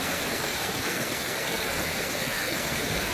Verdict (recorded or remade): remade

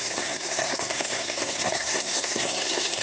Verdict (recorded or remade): remade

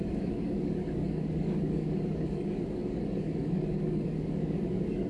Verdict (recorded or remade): remade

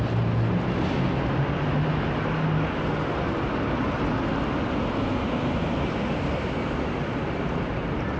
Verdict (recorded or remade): recorded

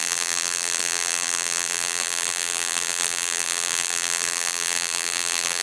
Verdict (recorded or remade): remade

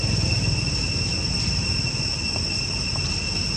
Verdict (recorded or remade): recorded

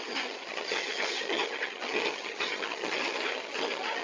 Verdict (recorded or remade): remade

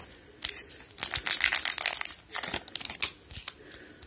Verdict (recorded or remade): recorded